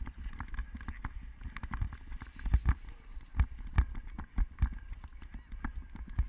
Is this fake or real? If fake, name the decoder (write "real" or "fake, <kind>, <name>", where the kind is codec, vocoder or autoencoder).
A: real